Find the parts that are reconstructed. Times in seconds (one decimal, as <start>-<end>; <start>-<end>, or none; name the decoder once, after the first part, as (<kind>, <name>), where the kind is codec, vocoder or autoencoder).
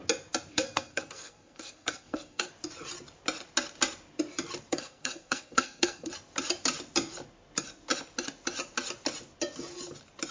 0.5-2.5 (codec, SNAC); 4.7-6.1